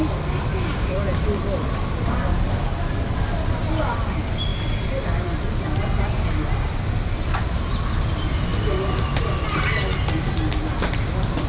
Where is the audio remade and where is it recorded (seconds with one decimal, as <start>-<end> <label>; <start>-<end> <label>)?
0.0-11.5 recorded